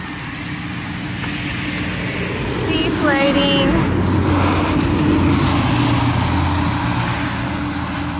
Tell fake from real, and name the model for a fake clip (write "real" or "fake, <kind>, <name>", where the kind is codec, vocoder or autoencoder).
real